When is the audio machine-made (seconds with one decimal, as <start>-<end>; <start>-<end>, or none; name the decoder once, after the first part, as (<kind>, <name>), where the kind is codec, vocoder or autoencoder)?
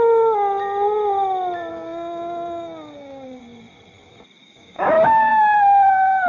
1.7-3.4 (codec, DAC); 4.4-5.3